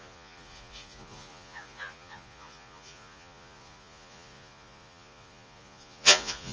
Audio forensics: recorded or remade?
remade